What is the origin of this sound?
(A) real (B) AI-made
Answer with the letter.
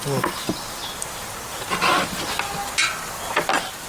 A